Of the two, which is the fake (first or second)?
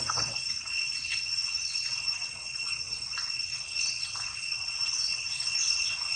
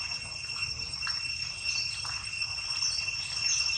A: first